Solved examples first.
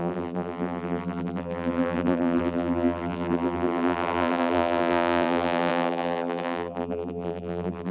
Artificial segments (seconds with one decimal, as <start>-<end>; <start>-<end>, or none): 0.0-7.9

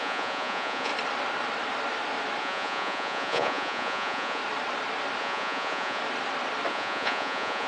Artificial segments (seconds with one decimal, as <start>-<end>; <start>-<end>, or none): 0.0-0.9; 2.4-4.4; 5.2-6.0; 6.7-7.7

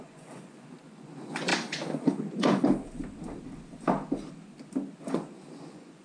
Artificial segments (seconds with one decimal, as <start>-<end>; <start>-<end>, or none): 0.0-1.5; 5.1-6.0